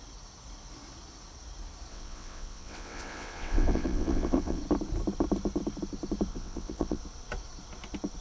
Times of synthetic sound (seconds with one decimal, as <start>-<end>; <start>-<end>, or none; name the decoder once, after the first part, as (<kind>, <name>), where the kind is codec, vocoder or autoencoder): 1.9-4.6 (vocoder, WaveNeXt); 6.3-7.0